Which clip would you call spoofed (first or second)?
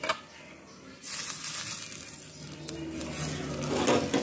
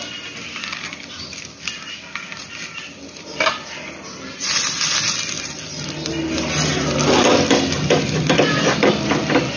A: second